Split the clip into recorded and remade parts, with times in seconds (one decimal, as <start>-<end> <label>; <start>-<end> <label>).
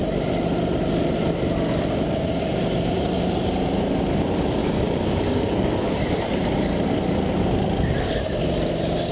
0.0-4.6 recorded; 4.6-5.7 remade; 5.7-9.1 recorded